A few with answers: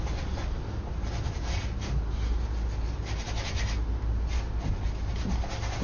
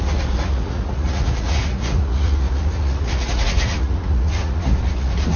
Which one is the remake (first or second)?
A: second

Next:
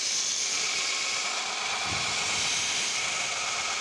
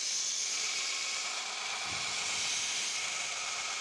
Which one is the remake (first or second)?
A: first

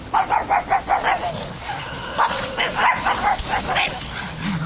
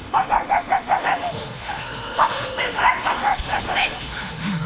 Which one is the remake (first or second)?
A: second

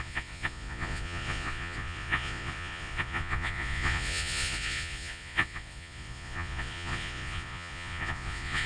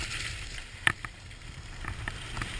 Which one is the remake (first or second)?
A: first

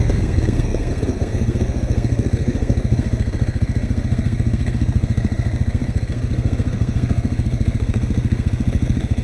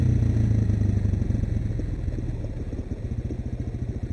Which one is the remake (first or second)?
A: first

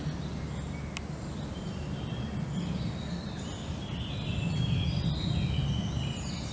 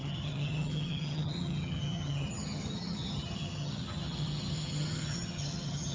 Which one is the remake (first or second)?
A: second